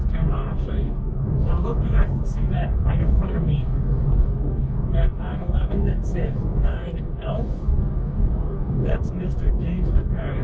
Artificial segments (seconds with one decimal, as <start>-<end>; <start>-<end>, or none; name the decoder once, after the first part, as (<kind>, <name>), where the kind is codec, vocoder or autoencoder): 0.0-10.4 (codec, DAC)